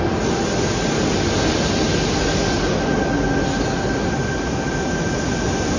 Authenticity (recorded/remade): recorded